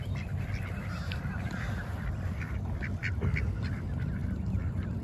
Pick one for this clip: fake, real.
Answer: real